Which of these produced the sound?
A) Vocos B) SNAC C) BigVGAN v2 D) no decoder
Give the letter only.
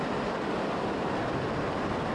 C